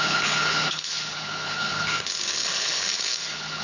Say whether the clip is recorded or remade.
remade